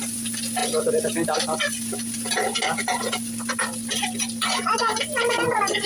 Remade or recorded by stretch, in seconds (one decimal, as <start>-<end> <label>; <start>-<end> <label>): 0.0-5.9 recorded